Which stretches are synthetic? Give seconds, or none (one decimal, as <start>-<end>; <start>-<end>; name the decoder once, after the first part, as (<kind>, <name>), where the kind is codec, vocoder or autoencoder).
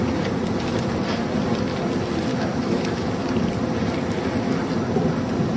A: 2.3-3.1 (autoencoder, DAC-VAE)